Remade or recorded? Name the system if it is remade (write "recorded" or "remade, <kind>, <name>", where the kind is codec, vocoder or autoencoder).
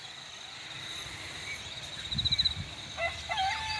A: recorded